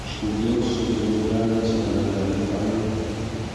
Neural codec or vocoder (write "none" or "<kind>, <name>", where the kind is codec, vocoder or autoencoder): none